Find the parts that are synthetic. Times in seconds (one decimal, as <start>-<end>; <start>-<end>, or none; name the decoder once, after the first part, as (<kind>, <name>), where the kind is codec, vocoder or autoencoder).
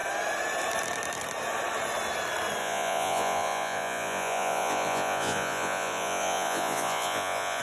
2.6-7.6 (vocoder, Vocos)